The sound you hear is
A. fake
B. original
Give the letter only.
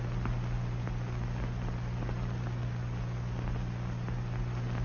B